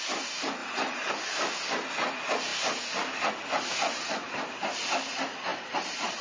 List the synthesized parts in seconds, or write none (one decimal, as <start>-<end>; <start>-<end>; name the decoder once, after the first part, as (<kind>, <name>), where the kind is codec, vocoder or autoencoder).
0.6-1.1 (vocoder, BigVGAN v2); 5.5-6.2